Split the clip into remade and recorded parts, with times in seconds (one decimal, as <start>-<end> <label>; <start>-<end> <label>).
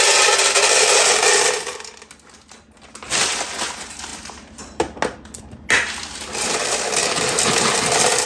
0.0-8.3 recorded